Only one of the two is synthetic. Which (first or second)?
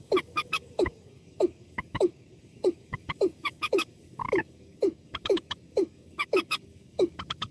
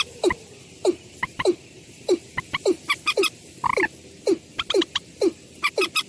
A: first